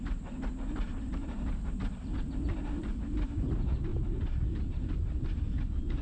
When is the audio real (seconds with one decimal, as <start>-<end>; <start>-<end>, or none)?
0.0-1.2; 1.8-3.9; 5.6-6.0